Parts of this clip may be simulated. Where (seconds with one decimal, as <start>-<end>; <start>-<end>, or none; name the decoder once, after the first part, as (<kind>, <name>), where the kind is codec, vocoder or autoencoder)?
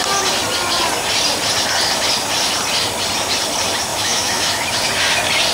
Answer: 3.9-4.7 (autoencoder, DAC-VAE)